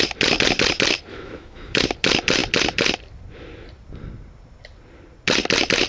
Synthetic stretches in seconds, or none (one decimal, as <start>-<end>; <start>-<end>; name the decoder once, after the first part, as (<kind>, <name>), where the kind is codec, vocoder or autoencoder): 1.1-1.8 (autoencoder, DAC-VAE)